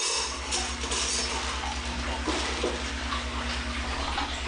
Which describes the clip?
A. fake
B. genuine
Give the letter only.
B